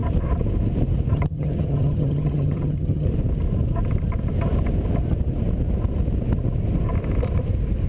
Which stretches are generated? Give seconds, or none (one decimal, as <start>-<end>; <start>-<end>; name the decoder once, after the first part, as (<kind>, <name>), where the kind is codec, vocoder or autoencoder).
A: 1.1-3.1 (vocoder, HiFi-GAN)